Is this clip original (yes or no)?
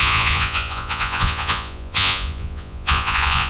no